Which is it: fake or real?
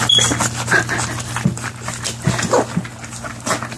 real